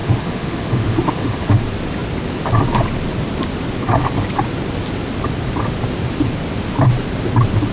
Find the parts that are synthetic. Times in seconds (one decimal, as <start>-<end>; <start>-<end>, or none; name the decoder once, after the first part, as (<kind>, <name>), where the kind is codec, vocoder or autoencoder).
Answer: 0.0-1.6 (autoencoder, DAC-VAE)

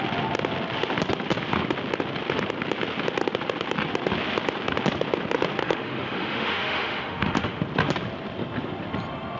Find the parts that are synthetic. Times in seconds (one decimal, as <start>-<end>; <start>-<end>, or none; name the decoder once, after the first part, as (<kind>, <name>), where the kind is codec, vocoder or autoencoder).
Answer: 5.6-7.6 (autoencoder, DAC-VAE)